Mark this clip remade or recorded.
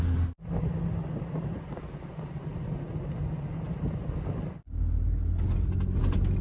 recorded